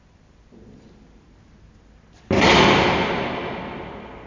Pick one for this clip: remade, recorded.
recorded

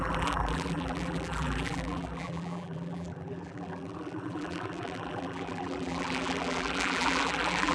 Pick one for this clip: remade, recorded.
remade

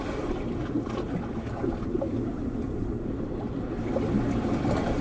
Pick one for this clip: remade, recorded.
recorded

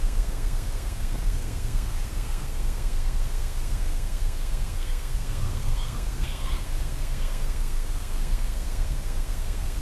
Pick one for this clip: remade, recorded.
remade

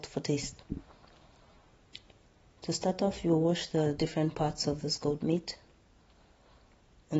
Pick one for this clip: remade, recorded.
remade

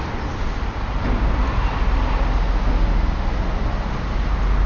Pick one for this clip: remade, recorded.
recorded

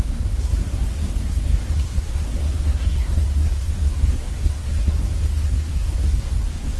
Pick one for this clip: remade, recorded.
remade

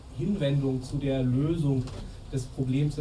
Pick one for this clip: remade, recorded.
recorded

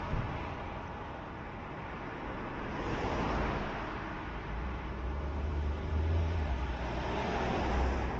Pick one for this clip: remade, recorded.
remade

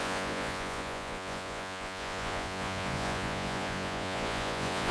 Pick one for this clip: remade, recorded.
remade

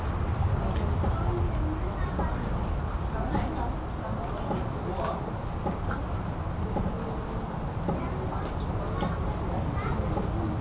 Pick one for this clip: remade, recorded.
recorded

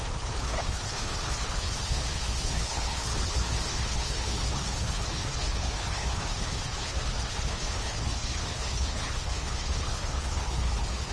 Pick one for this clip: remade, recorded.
remade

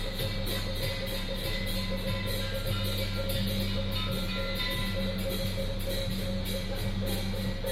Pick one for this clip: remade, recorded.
recorded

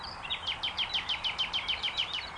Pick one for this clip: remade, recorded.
remade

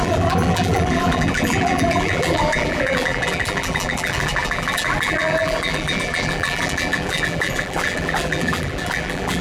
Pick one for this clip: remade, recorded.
remade